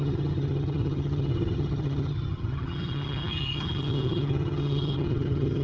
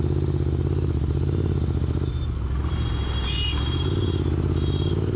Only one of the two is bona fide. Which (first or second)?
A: second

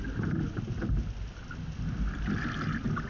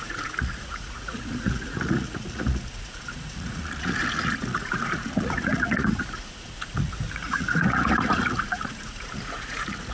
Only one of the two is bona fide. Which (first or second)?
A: first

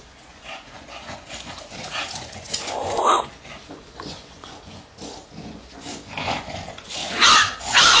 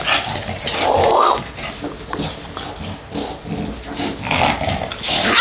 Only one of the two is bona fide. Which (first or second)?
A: second